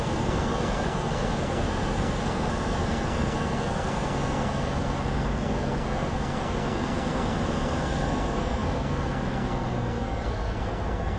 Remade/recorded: remade